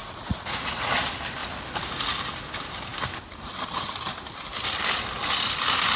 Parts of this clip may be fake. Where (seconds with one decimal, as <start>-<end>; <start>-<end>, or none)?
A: 0.0-0.9